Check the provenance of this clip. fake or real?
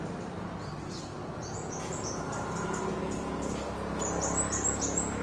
real